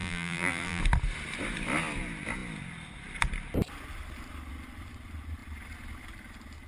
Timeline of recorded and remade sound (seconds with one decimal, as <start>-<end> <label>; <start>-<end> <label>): 0.0-0.8 remade; 0.8-6.7 recorded